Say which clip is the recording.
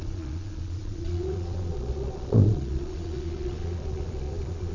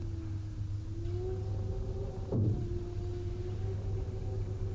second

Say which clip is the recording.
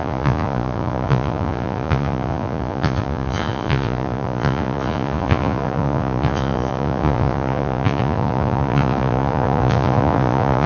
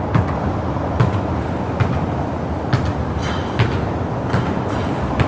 second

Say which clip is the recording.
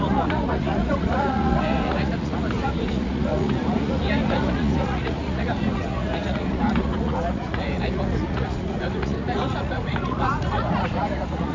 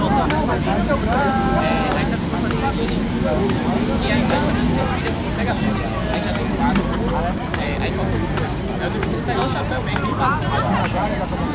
second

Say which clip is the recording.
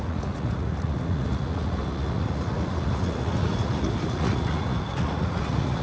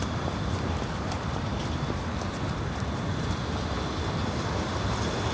second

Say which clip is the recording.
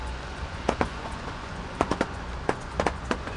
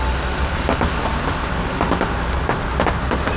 second